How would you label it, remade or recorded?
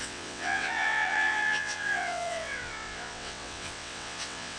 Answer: remade